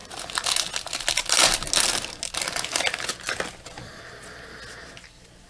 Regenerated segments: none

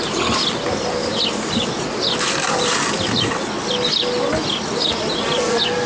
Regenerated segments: none

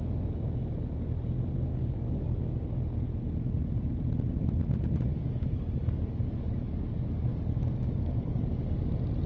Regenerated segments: 1.7-2.6 (codec, DAC); 5.1-8.9